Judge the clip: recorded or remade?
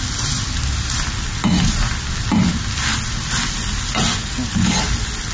recorded